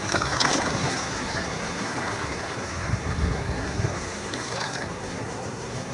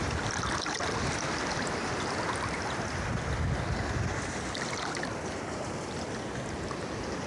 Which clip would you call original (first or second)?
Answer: second